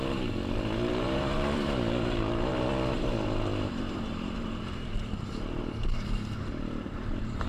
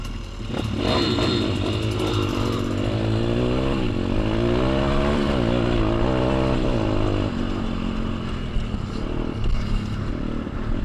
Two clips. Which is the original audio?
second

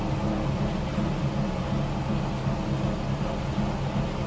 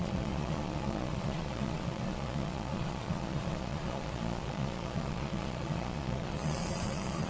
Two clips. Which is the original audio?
first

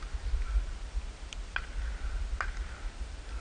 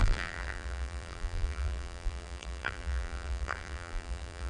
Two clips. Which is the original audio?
first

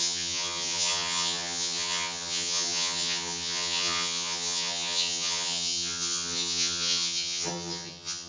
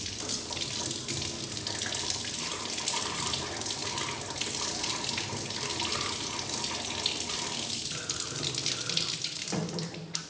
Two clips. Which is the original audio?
second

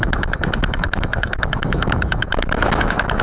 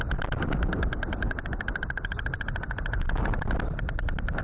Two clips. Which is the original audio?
second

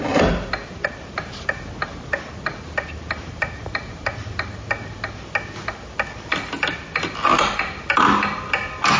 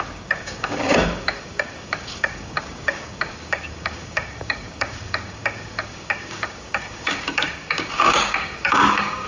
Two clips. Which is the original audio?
first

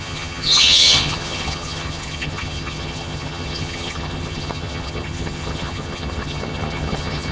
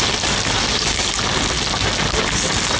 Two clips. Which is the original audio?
second